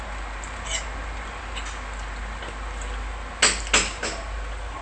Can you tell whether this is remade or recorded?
recorded